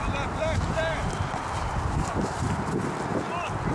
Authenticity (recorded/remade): recorded